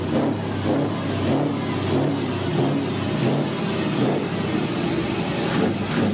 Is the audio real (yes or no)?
yes